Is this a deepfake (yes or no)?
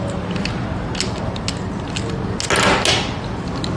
no